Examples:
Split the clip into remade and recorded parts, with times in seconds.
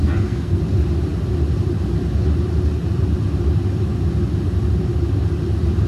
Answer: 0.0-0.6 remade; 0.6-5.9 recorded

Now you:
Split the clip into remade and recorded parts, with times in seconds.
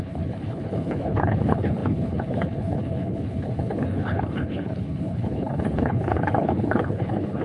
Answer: 0.0-7.4 remade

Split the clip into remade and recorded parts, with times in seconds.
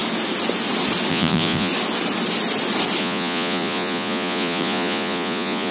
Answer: 0.0-1.1 recorded; 1.1-1.7 remade; 1.7-3.0 recorded; 3.0-5.7 remade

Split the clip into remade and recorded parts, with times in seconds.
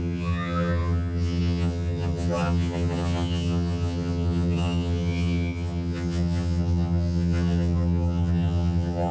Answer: 0.0-9.1 remade